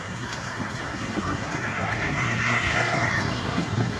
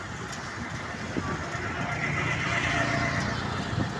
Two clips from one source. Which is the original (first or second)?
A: second